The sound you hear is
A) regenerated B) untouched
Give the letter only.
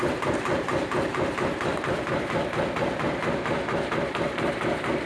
B